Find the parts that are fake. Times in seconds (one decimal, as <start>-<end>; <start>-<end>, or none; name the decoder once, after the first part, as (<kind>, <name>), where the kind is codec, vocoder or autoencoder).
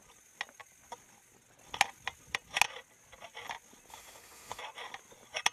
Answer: 3.9-4.6 (autoencoder, DAC-VAE)